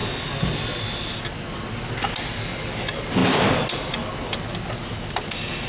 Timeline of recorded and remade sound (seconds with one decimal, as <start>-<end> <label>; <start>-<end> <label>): 0.0-5.7 recorded